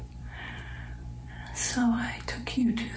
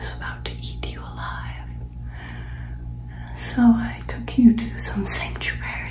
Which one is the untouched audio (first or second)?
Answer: second